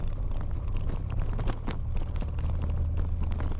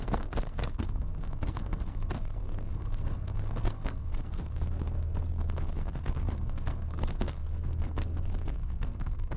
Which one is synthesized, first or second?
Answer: second